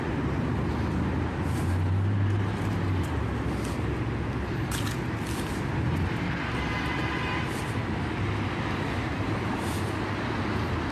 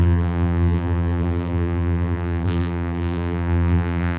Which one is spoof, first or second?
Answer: second